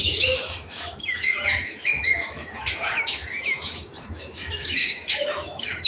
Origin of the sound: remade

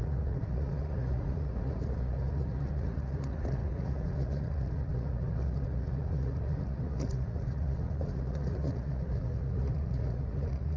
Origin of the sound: remade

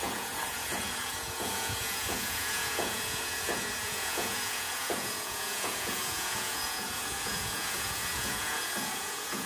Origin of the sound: remade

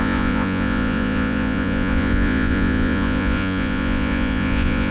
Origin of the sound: remade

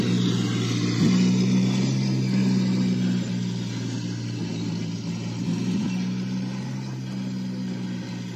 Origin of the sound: recorded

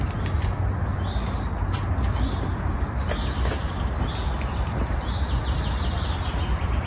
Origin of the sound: recorded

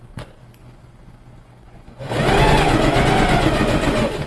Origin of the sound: remade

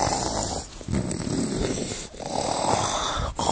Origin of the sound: recorded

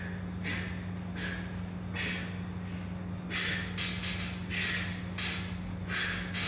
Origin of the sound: recorded